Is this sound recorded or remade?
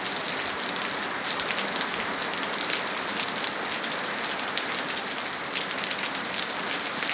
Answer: recorded